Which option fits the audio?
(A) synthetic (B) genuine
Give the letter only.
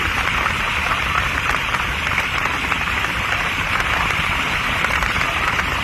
A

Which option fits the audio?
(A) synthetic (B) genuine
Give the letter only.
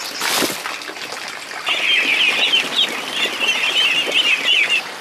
B